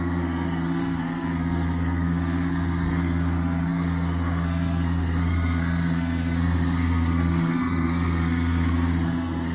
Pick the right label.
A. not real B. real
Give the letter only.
A